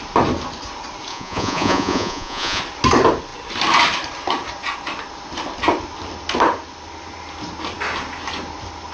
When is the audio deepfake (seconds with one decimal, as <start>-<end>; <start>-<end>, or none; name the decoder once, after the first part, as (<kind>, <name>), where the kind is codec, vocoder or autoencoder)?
1.1-2.6 (vocoder, Vocos)